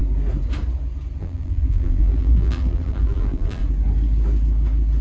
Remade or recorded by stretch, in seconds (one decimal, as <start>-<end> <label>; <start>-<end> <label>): 0.0-1.2 recorded; 1.2-3.6 remade; 3.6-5.0 recorded